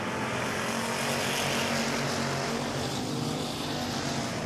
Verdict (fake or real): real